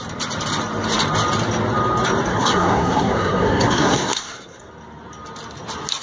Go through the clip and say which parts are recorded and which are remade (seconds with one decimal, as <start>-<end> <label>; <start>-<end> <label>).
0.0-2.3 recorded; 2.3-4.7 remade; 4.7-6.0 recorded